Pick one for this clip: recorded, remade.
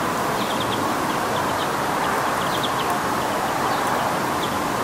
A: recorded